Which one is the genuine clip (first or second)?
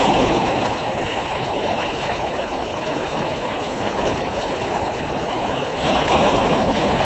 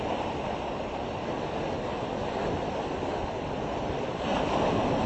second